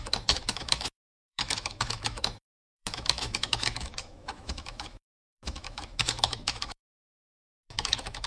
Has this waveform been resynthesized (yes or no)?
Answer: yes